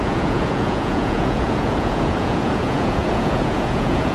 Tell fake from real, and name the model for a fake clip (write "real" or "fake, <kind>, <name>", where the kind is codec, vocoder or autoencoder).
fake, vocoder, Vocos